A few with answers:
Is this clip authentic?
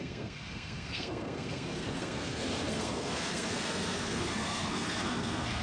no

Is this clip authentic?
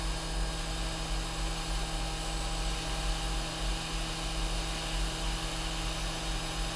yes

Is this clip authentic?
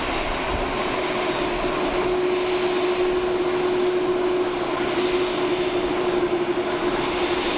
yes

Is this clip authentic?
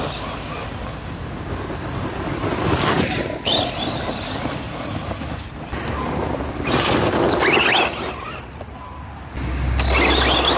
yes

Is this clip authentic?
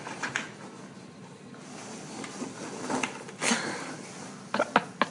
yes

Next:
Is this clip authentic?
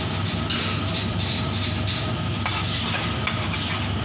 no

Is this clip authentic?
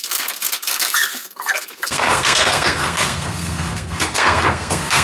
no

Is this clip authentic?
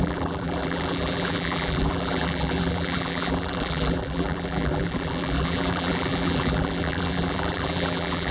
no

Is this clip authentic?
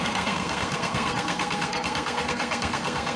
no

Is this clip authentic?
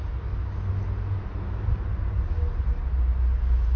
yes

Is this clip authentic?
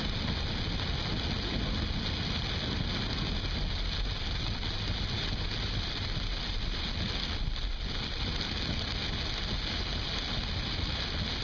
yes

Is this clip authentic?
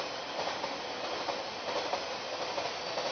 yes